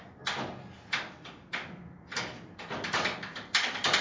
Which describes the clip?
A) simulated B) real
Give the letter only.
B